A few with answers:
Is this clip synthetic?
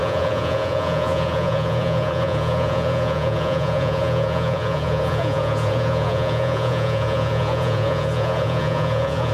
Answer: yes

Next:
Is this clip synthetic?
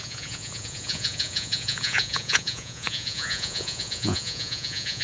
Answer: yes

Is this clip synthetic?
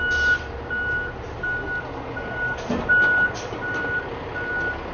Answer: no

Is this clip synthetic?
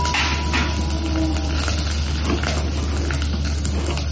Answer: no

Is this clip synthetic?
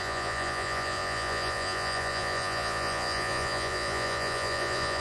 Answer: yes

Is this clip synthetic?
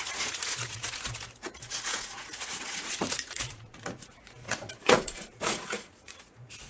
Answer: yes